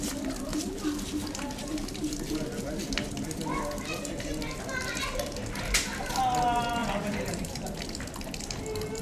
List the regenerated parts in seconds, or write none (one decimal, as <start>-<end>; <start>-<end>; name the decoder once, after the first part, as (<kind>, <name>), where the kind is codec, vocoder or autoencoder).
0.5-2.6 (vocoder, BigVGAN v2); 6.8-7.8